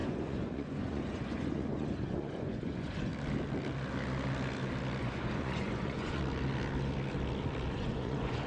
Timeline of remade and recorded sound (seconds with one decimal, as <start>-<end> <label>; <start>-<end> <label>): 0.0-3.1 remade; 3.1-5.0 recorded; 5.0-6.2 remade; 6.2-7.7 recorded; 7.7-8.5 remade